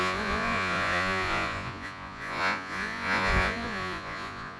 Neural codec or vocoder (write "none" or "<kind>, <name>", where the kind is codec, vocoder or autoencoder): vocoder, Vocos